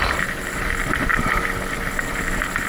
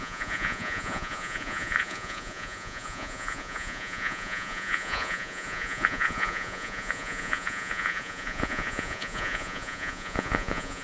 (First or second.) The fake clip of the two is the second